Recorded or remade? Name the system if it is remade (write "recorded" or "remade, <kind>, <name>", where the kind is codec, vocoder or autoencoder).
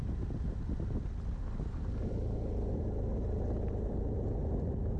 recorded